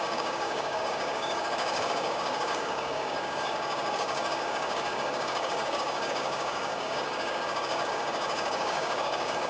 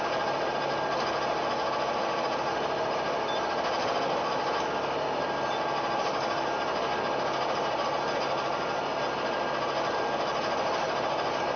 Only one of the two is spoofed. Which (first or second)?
first